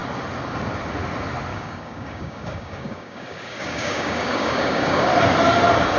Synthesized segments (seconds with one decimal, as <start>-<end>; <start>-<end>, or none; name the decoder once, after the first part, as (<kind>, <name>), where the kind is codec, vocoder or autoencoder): 1.5-5.1 (codec, DAC)